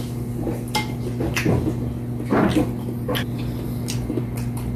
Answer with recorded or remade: recorded